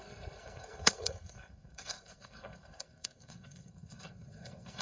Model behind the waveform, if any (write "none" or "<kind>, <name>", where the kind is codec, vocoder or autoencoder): codec, SNAC